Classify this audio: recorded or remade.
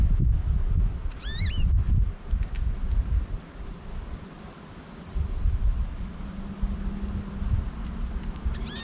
recorded